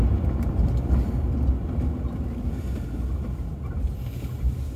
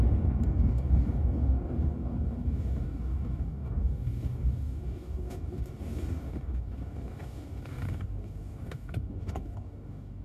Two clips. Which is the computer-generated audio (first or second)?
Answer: second